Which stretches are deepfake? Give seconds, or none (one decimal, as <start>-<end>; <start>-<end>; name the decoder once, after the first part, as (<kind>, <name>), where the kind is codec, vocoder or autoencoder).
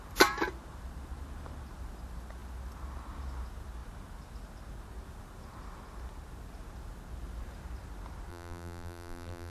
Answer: 8.3-9.5 (vocoder, BigVGAN v2)